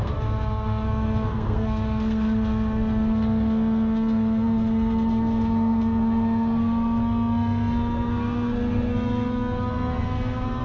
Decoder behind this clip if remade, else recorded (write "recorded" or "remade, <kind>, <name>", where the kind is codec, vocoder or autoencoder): remade, codec, SNAC